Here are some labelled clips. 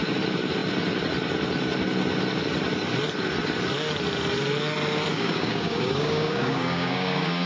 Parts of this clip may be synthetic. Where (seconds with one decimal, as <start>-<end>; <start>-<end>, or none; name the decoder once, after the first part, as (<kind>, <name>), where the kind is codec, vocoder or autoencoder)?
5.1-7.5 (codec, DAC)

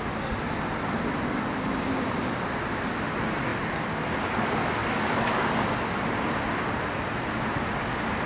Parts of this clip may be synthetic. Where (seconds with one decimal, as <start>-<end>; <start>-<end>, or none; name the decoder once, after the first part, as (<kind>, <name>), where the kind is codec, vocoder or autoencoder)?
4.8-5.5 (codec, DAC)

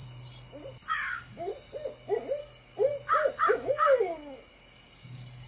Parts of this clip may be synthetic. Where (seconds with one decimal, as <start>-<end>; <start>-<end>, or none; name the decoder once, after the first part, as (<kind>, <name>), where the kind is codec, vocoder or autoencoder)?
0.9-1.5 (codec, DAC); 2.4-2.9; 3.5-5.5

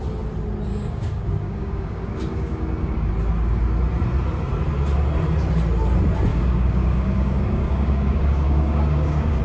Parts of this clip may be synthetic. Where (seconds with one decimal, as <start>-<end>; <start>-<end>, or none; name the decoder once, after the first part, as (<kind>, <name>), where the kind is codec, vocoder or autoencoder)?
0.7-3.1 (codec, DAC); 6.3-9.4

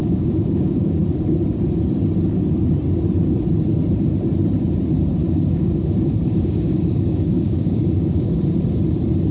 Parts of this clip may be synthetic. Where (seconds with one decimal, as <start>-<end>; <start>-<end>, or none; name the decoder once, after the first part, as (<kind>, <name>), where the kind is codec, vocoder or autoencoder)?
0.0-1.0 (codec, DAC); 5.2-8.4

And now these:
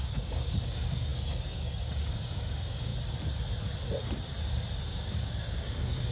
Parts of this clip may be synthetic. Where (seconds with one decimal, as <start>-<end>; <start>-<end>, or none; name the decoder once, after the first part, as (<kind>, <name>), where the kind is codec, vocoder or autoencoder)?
0.0-2.9 (codec, DAC); 4.8-6.1

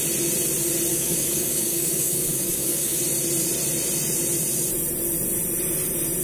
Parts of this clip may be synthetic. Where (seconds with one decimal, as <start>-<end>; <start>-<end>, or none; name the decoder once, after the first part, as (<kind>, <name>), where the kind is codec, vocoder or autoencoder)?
0.9-3.0 (codec, DAC)

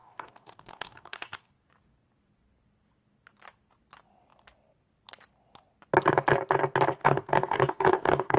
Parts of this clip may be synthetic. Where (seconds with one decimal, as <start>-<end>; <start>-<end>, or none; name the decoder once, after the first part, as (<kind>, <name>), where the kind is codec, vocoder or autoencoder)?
0.0-1.5 (codec, DAC); 7.0-8.4